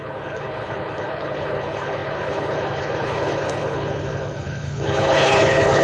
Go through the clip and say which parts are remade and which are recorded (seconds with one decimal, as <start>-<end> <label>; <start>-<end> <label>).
0.0-5.8 remade